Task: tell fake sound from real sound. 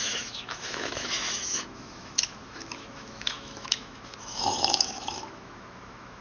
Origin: fake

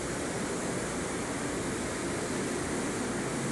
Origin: real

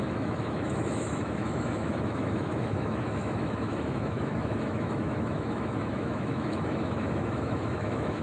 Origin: fake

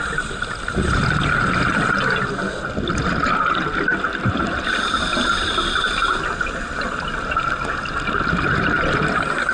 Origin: real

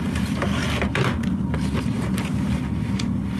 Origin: real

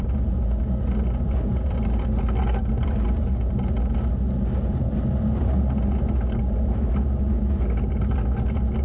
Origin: real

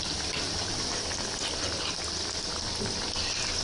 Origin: real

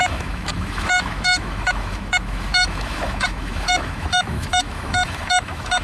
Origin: fake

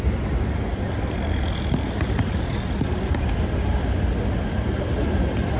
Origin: real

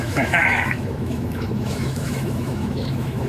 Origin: fake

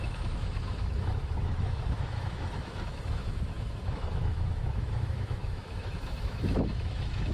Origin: fake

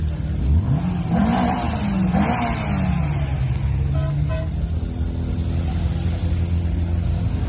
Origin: real